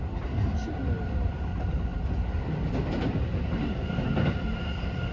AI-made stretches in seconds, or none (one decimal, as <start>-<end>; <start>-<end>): none